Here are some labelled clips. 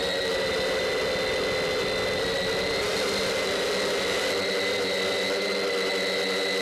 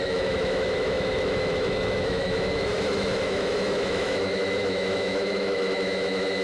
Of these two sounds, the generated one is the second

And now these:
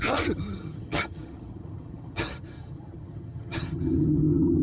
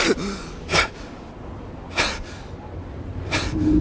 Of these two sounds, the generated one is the first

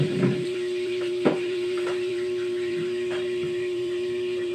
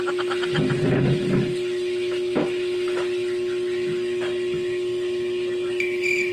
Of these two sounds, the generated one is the first